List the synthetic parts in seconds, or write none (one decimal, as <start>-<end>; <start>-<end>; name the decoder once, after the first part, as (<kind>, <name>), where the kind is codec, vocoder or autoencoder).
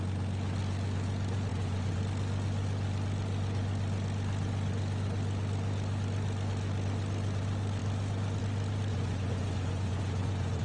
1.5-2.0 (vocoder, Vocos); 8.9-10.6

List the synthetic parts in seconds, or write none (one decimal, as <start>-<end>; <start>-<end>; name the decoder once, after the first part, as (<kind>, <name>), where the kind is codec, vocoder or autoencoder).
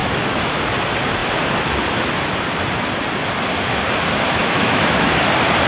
0.0-0.6 (autoencoder, DAC-VAE); 4.4-5.2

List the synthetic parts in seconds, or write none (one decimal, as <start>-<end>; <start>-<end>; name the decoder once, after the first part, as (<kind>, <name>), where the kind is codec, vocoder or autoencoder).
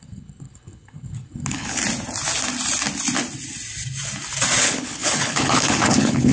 0.0-1.8 (codec, HILCodec); 4.6-6.3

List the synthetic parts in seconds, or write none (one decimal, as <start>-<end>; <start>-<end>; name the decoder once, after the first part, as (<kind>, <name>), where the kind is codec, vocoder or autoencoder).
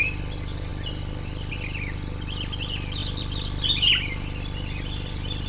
none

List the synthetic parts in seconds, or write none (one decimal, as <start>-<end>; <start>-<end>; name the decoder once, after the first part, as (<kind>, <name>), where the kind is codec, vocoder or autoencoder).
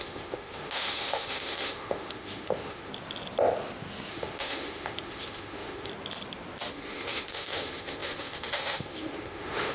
0.0-2.9 (autoencoder, DAC-VAE); 4.1-5.9; 6.7-9.7